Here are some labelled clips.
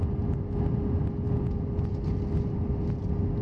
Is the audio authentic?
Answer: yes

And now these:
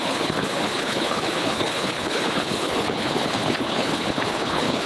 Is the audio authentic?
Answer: no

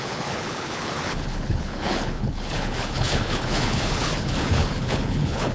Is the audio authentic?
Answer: no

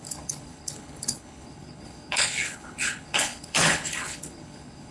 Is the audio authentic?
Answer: no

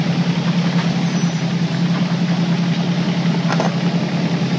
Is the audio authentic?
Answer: yes